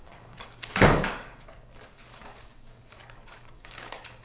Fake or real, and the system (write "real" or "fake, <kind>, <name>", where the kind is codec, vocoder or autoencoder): fake, codec, DAC